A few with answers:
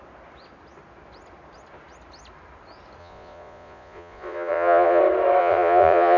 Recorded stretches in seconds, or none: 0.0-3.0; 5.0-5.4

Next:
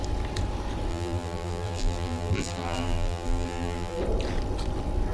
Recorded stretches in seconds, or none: 0.0-0.9; 4.0-5.1

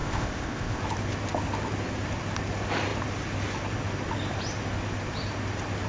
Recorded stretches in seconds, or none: 0.8-5.9

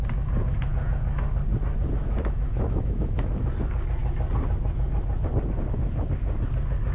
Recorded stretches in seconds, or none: 0.0-2.0; 3.5-6.9

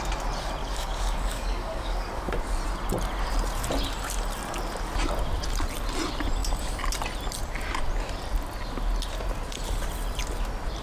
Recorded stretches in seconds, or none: 0.0-0.6; 2.3-10.8

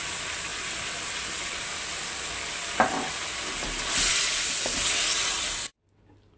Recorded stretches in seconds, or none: 0.0-6.4